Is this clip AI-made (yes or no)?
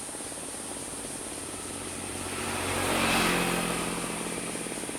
no